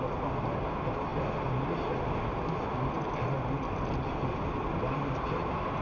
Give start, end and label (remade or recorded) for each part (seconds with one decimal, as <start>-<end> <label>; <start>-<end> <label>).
0.0-5.8 recorded